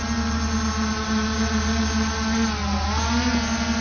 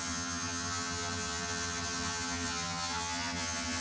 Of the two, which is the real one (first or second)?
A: first